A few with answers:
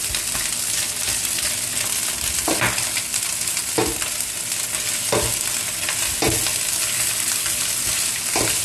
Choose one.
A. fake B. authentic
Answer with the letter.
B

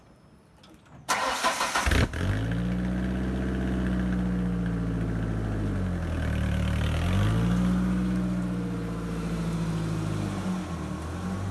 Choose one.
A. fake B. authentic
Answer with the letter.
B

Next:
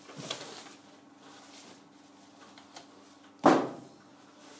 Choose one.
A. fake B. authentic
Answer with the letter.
B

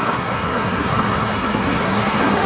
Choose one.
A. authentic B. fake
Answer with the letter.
B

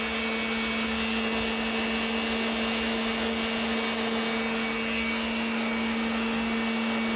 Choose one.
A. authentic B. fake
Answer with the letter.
A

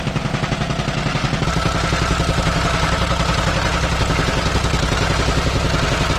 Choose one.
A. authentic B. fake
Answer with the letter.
A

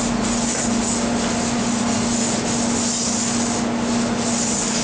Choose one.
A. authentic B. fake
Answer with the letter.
A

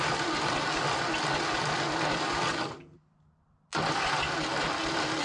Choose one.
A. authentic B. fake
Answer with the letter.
A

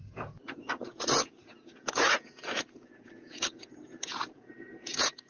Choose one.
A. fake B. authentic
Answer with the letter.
A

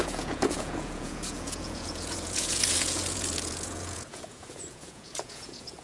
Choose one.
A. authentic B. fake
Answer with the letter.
B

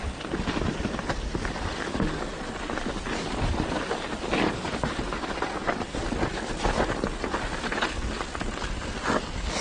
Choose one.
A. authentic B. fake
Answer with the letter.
A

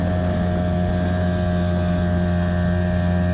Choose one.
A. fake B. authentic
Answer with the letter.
B